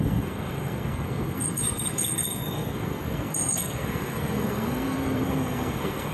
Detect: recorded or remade remade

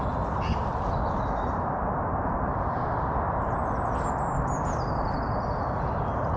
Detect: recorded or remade recorded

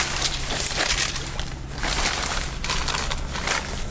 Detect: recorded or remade recorded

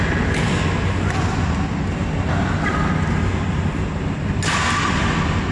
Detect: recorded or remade recorded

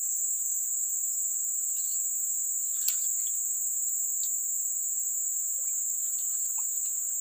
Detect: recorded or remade remade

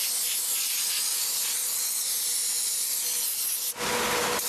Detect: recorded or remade recorded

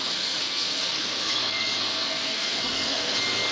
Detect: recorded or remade remade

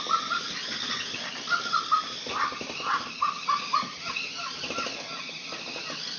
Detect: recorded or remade recorded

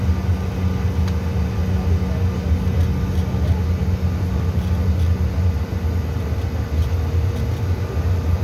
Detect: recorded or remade recorded